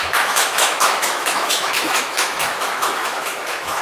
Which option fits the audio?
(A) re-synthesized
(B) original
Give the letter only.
A